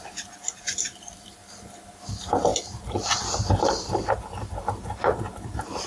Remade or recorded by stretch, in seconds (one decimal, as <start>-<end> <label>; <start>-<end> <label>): 0.0-1.4 remade; 1.4-2.1 recorded; 2.1-5.9 remade